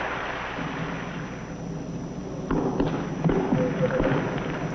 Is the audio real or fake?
real